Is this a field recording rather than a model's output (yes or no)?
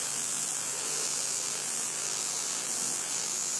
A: no